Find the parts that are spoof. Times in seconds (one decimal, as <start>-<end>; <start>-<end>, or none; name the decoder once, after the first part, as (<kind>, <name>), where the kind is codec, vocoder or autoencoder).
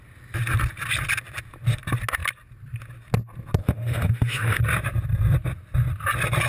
3.6-4.6 (autoencoder, DAC-VAE)